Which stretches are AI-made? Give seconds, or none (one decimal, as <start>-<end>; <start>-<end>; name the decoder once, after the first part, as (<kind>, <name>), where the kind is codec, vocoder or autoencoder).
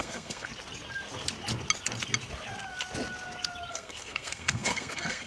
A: 0.0-0.5 (codec, SNAC); 3.7-5.3